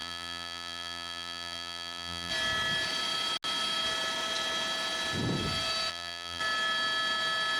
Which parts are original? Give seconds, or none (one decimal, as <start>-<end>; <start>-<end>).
2.3-5.9; 6.4-7.6